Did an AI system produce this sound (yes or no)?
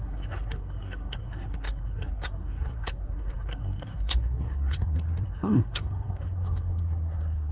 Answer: yes